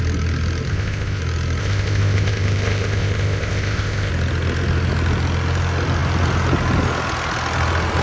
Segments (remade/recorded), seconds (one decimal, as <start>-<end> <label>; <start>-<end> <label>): 0.0-0.7 recorded; 0.7-1.2 remade; 1.2-1.6 recorded; 1.6-4.1 remade; 4.1-8.0 recorded